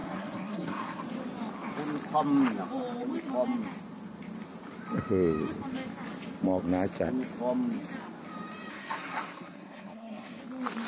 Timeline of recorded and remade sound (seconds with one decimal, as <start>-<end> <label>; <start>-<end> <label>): 0.0-1.0 remade; 1.0-8.7 recorded; 8.7-10.4 remade; 10.4-10.9 recorded